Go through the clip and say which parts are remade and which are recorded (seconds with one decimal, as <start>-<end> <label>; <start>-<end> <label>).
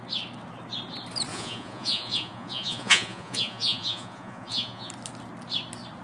0.0-1.3 recorded; 1.3-4.9 remade; 4.9-6.0 recorded